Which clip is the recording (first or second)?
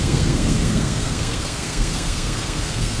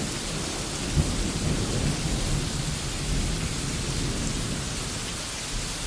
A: second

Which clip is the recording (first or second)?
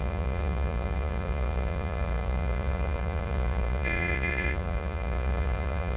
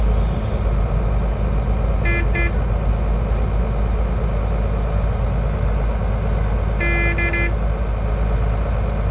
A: second